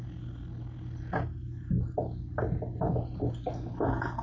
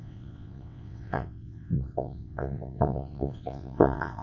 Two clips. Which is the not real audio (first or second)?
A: second